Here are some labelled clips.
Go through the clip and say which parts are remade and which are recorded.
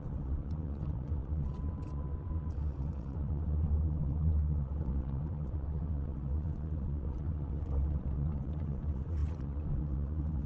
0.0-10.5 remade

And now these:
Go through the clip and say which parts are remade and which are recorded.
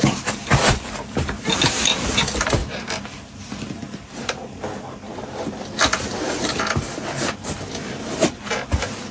0.0-9.1 recorded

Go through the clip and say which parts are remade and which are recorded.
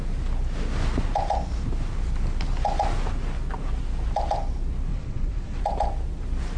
0.0-4.9 recorded; 4.9-5.6 remade; 5.6-6.6 recorded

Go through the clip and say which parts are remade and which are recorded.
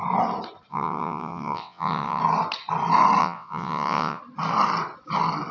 0.0-0.7 recorded; 0.7-2.2 remade; 2.2-3.2 recorded; 3.2-4.2 remade; 4.2-5.5 recorded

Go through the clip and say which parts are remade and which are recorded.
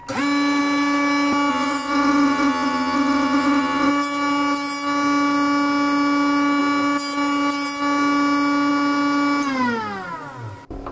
0.0-1.5 recorded; 1.5-3.9 remade; 3.9-10.9 recorded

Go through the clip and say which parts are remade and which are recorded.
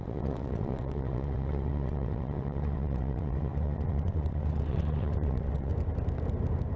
0.0-5.7 remade; 5.7-6.8 recorded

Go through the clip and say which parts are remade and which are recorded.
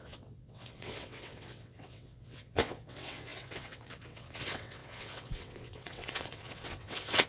0.0-7.3 remade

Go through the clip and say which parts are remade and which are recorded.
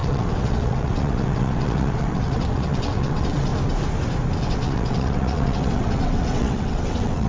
0.0-3.5 remade; 3.5-4.4 recorded; 4.4-7.3 remade